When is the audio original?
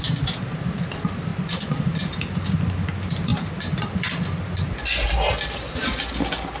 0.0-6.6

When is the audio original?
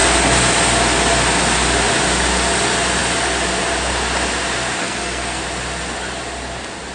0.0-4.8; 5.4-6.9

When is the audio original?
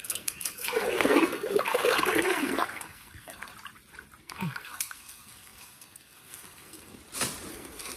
3.5-4.2; 7.0-7.5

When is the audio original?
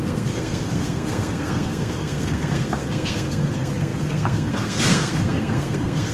none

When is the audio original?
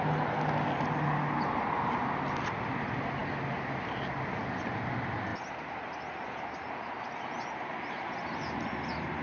0.0-9.2